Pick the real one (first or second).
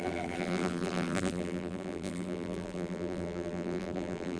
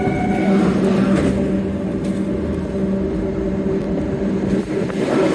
second